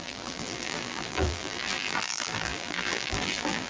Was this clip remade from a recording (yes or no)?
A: yes